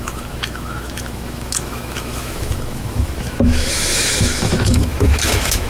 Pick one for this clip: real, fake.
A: fake